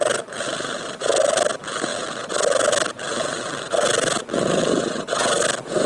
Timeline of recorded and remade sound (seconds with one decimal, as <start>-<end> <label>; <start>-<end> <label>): 0.0-5.9 recorded